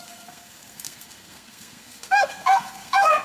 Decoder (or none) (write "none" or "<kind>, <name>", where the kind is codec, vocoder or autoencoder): codec, SNAC